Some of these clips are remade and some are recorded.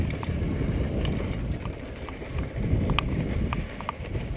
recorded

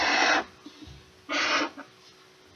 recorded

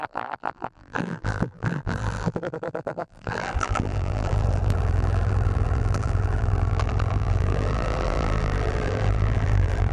remade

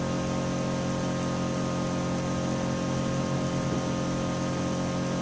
recorded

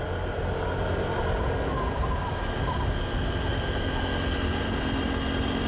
recorded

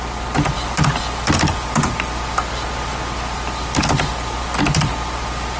recorded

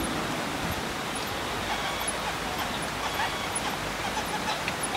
recorded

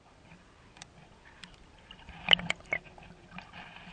recorded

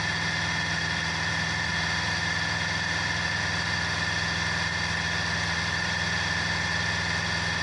recorded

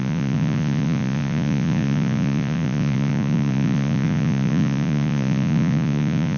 remade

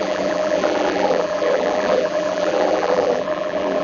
remade